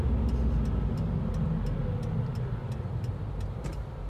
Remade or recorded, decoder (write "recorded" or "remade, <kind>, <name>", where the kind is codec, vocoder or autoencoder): recorded